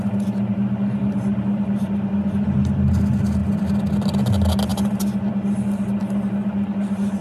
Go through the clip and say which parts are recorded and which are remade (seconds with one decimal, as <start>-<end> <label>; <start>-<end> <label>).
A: 0.0-7.2 recorded